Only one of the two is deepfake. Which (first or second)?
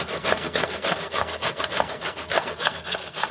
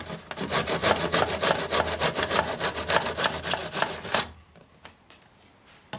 first